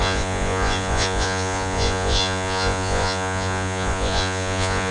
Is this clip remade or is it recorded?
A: remade